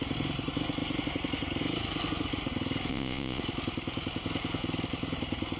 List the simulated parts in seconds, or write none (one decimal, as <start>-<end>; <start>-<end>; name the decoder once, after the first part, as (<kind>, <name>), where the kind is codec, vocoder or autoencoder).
2.9-3.4 (vocoder, Vocos)